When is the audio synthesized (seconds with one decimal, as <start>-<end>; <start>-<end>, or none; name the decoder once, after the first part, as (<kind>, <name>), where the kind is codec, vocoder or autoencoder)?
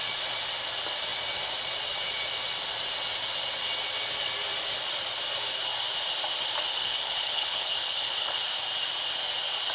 6.7-8.4 (codec, HILCodec)